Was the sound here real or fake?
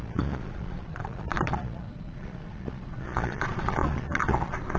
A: fake